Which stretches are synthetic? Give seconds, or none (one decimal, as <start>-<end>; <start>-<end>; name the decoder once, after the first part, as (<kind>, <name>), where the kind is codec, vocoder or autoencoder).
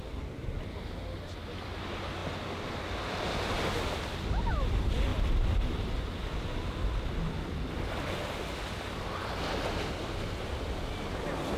none